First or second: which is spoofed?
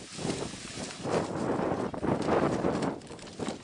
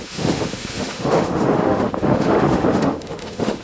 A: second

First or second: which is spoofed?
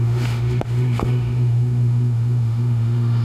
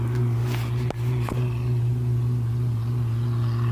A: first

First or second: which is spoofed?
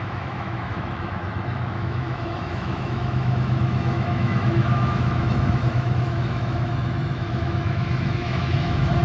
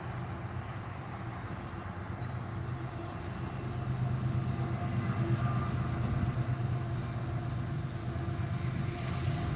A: first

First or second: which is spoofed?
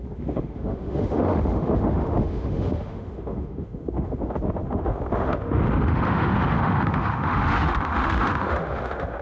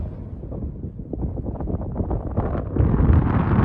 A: first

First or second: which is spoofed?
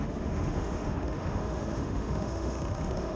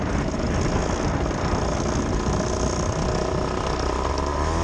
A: first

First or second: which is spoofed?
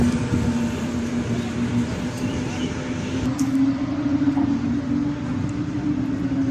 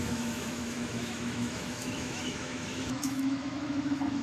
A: second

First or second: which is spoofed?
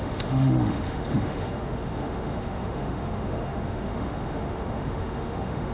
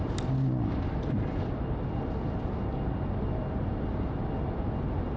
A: first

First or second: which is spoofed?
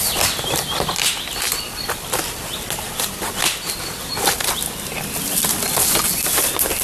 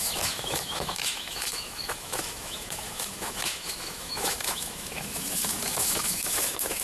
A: second